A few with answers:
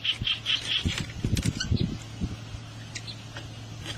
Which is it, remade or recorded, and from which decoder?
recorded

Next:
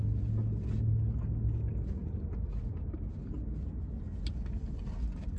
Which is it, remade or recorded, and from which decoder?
recorded